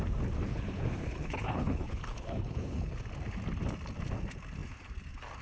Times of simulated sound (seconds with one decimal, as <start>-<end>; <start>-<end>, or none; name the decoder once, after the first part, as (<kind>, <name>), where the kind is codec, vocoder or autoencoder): 0.5-3.1 (codec, HILCodec)